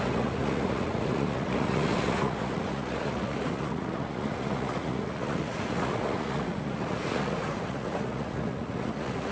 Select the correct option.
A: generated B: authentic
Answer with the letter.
A